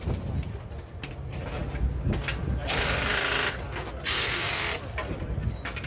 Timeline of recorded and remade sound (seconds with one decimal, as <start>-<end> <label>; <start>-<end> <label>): 0.0-5.9 recorded